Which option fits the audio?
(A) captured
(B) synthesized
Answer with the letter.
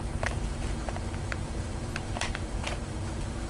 B